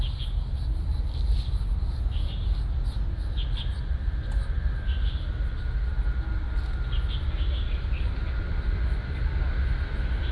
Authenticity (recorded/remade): recorded